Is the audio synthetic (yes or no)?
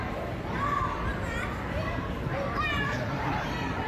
no